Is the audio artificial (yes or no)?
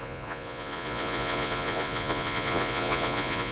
yes